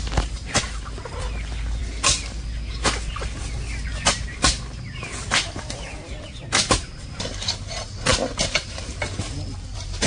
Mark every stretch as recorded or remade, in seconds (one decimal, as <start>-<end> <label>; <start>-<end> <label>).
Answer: 0.0-10.1 recorded